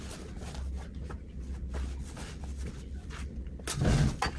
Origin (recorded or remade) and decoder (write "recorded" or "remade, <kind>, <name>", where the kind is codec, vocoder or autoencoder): recorded